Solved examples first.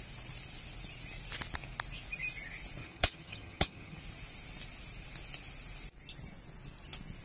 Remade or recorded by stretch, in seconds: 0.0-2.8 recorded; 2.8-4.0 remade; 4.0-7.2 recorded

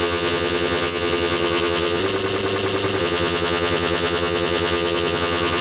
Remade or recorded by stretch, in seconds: 0.0-2.0 remade; 2.0-3.0 recorded; 3.0-5.6 remade

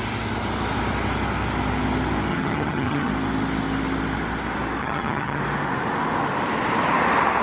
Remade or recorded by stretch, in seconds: 0.0-2.3 recorded; 2.3-3.1 remade; 3.1-4.8 recorded; 4.8-5.4 remade; 5.4-7.4 recorded

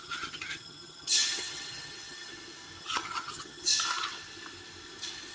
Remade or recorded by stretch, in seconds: 0.0-2.3 remade; 2.3-2.8 recorded; 2.8-3.7 remade; 3.7-5.3 recorded

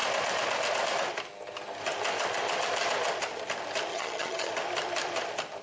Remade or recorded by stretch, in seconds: 0.0-3.9 recorded; 3.9-4.5 remade; 4.5-5.6 recorded